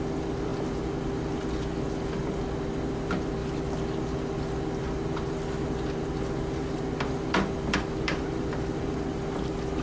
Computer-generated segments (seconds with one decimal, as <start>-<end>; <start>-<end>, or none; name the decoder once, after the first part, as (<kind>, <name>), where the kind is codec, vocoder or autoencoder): none